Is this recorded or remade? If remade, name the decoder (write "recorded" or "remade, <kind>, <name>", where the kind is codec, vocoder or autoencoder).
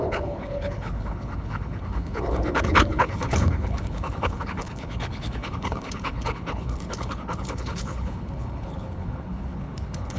remade, codec, HILCodec